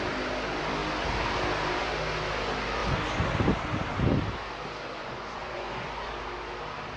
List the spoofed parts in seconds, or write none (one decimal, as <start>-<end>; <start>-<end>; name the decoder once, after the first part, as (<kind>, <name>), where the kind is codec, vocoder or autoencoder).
5.0-6.1 (vocoder, Vocos)